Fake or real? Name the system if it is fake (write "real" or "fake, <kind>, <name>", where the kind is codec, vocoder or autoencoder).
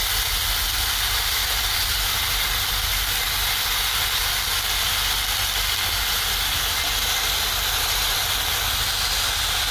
real